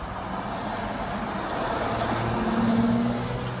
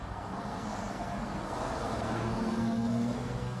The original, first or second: first